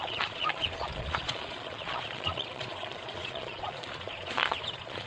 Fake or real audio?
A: fake